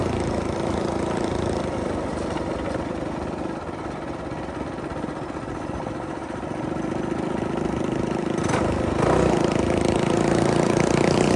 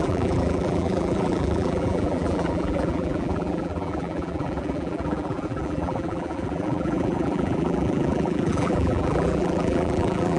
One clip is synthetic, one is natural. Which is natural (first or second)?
first